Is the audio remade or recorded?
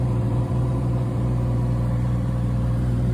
remade